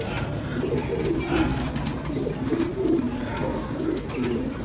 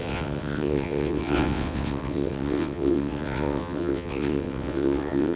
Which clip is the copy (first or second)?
second